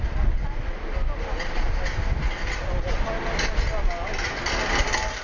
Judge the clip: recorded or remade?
recorded